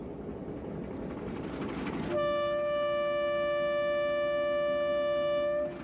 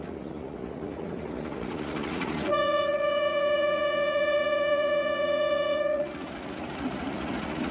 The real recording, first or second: first